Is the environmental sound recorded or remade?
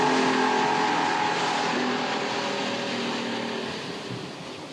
recorded